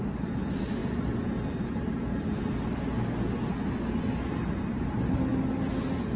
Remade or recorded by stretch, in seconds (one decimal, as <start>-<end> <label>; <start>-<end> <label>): 0.0-6.2 recorded